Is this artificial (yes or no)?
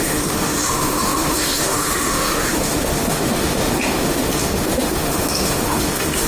yes